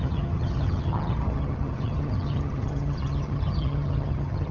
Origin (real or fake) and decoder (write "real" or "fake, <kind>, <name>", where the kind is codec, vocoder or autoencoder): fake, vocoder, HiFi-GAN